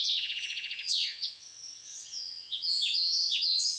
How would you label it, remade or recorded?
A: remade